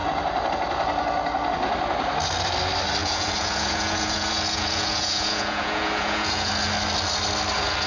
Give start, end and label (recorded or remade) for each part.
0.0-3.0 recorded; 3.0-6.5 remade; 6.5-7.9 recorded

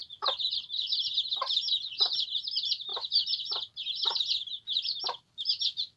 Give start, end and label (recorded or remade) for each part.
0.0-6.0 recorded